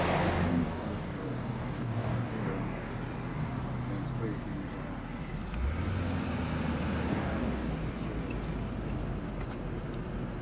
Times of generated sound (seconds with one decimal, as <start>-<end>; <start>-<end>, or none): 0.5-2.9; 7.1-7.7